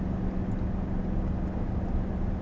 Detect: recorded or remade recorded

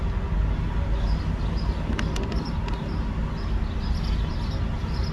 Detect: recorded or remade recorded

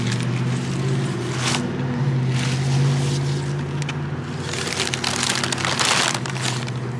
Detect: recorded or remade recorded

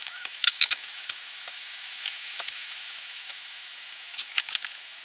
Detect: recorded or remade remade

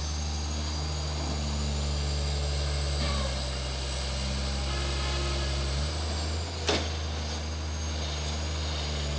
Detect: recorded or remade recorded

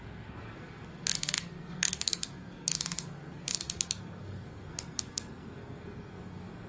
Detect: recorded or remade remade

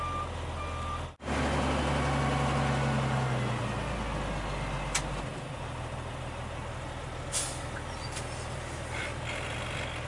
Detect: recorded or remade recorded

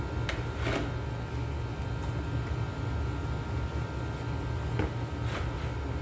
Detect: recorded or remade recorded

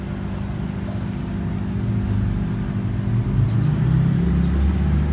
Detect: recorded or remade recorded